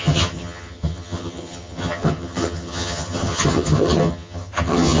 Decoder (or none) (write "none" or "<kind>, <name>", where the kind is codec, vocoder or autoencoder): vocoder, HiFi-GAN